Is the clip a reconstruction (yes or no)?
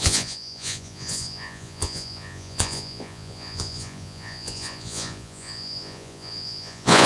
yes